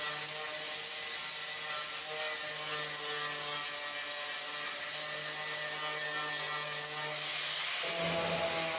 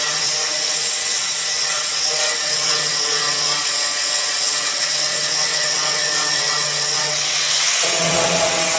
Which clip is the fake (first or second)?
second